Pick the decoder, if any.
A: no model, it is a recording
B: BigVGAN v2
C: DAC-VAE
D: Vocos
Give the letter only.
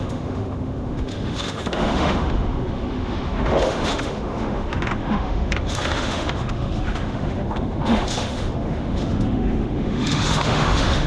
C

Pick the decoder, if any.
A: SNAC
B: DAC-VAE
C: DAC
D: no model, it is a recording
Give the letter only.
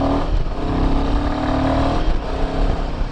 D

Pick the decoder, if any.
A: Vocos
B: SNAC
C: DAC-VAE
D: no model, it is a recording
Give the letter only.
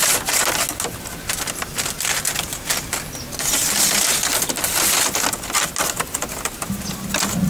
D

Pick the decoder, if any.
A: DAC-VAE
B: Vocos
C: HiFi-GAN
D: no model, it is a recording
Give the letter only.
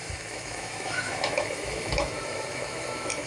A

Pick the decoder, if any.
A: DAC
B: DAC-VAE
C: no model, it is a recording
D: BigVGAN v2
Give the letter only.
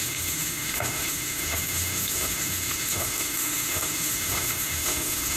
B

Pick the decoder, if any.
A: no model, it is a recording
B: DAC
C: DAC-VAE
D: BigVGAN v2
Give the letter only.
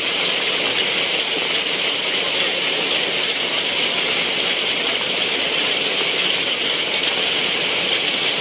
A